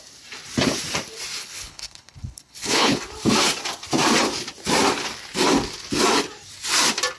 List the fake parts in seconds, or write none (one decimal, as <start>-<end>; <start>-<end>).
1.4-3.0